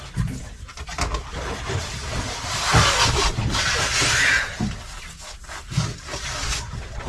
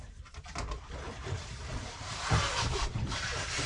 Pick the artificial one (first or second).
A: second